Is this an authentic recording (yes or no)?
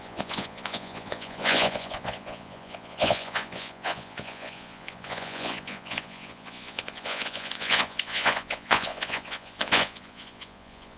no